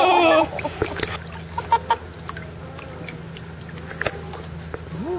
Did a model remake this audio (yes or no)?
no